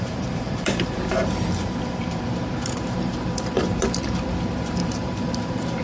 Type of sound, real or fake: fake